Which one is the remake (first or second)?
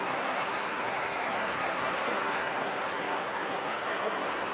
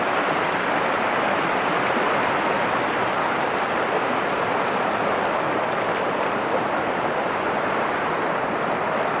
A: first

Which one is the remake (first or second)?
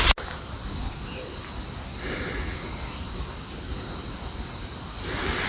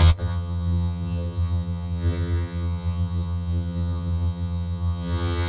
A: second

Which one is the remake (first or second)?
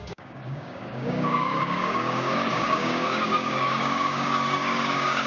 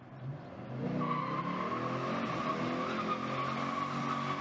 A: first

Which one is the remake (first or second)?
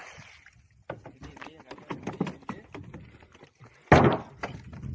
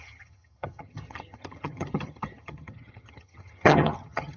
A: second